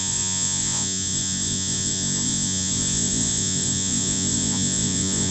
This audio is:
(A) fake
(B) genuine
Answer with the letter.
A